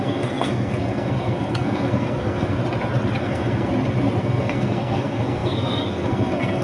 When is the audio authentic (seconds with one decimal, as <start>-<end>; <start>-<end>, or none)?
2.6-3.2; 3.7-4.2